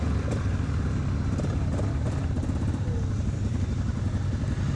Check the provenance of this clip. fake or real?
fake